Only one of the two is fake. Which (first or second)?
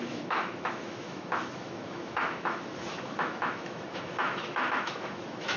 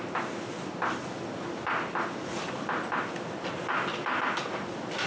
first